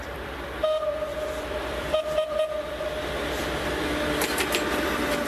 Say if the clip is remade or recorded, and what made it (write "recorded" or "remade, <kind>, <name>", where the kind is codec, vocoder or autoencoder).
recorded